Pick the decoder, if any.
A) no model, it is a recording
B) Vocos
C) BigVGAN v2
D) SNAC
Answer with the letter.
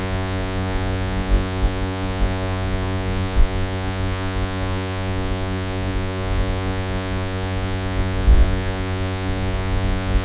B